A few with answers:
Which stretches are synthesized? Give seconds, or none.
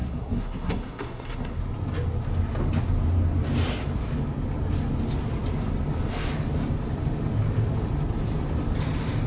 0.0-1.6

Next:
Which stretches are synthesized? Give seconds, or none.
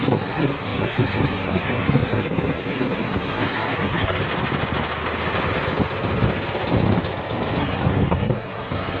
0.0-4.2; 7.6-9.0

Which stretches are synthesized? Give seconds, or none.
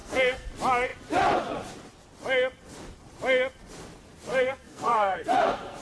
0.0-0.5; 4.3-5.8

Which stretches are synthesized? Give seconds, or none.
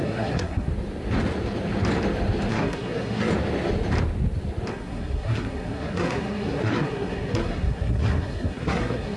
0.0-0.7; 2.5-3.3; 4.7-9.2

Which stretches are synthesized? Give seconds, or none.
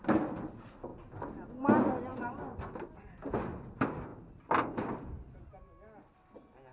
none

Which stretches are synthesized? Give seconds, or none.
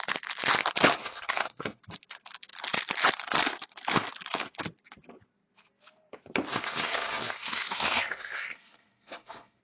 1.0-1.8; 6.5-9.6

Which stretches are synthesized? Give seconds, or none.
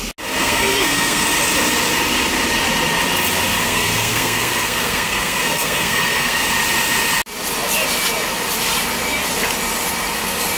0.4-1.2; 3.6-6.5